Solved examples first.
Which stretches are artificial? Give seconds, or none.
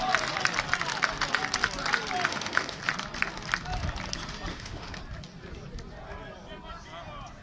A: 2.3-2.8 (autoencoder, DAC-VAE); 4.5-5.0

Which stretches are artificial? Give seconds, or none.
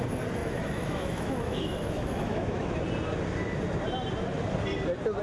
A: 0.4-2.7 (autoencoder, DAC-VAE)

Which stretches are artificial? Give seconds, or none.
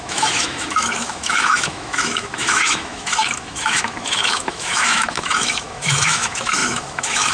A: 0.0-7.3 (autoencoder, DAC-VAE)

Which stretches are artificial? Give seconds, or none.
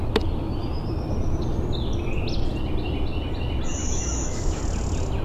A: 3.8-4.6 (autoencoder, DAC-VAE)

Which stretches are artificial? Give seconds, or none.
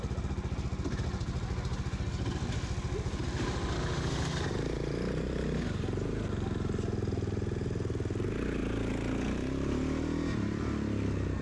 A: none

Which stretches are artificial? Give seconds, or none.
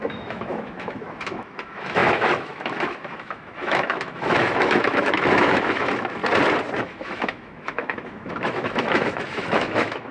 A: 0.0-6.2 (autoencoder, DAC-VAE); 6.8-10.1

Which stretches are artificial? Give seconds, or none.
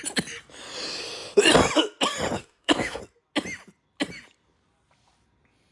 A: 2.4-3.0 (autoencoder, DAC-VAE)